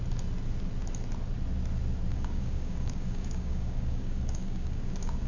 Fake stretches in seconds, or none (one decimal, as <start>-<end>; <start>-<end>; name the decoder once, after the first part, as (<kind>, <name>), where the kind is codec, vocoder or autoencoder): 2.1-5.3 (codec, DAC)